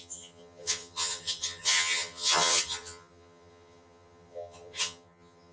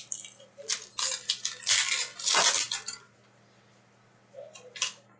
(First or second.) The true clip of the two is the second